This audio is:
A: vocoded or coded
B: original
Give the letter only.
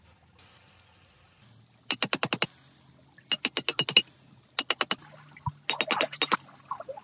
B